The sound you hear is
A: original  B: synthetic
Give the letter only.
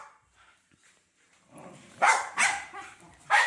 B